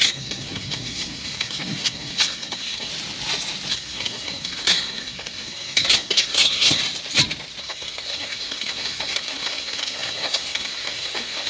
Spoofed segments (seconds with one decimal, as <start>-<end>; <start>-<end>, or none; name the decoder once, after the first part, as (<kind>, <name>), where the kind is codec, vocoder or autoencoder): 0.0-2.9 (codec, SNAC); 3.7-6.8; 7.6-11.5